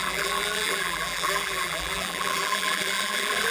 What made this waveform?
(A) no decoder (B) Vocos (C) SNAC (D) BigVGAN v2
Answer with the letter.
D